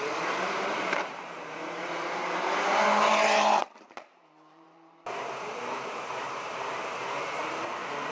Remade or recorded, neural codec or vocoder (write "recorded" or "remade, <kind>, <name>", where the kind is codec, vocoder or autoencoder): remade, vocoder, BigVGAN v2